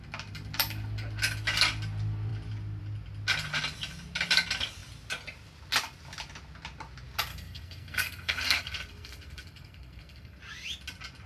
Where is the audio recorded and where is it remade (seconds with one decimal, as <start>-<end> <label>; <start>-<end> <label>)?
0.0-7.3 recorded; 7.3-10.4 remade; 10.4-11.3 recorded